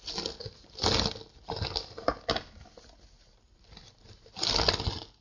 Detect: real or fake real